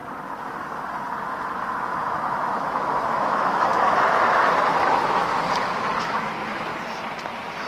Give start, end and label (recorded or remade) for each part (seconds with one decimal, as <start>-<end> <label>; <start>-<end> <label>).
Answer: 0.0-1.2 recorded; 1.2-5.3 remade; 5.3-6.0 recorded; 6.0-6.7 remade; 6.7-7.7 recorded